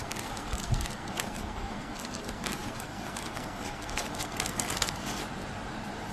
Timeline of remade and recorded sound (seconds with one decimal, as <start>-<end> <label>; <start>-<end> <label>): 0.0-5.2 remade; 5.2-6.1 recorded